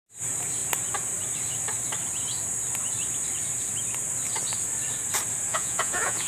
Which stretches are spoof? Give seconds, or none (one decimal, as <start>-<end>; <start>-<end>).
5.5-6.3

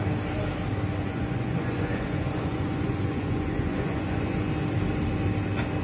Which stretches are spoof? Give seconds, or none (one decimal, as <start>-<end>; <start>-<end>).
1.0-4.5